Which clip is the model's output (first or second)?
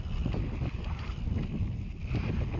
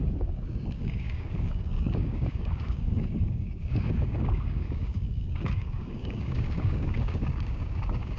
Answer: second